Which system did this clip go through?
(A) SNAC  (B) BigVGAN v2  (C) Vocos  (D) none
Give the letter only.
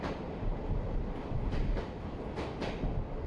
D